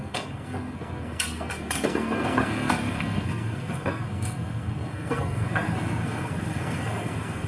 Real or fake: fake